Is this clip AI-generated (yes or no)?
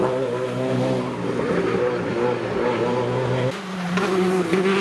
no